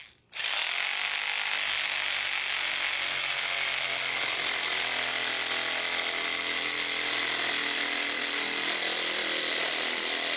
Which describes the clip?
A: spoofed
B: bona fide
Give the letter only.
B